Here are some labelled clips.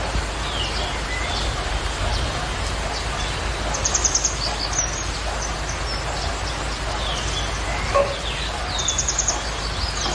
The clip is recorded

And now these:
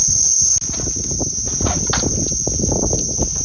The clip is recorded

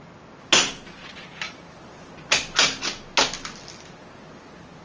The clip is recorded